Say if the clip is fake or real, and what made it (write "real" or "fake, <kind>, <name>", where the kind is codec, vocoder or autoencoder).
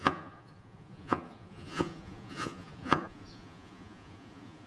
fake, vocoder, Vocos